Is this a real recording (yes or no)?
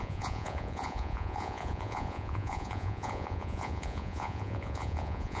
no